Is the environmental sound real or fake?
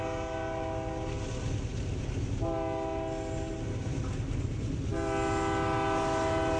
real